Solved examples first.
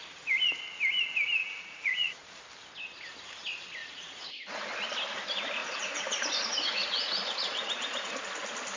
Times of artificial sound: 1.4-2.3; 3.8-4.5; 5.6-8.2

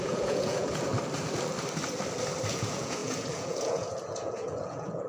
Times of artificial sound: 0.0-0.9; 2.5-5.1

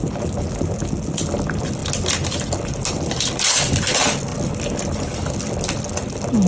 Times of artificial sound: none

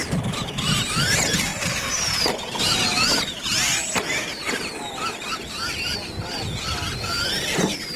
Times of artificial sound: none

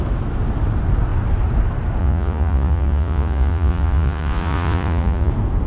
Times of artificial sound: 2.0-5.3